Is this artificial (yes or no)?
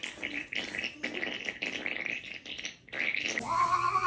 no